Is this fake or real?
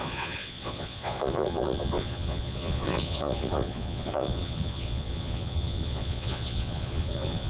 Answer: fake